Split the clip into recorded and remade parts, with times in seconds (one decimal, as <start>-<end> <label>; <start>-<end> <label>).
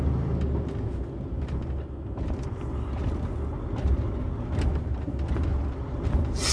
0.0-5.5 recorded; 5.5-6.5 remade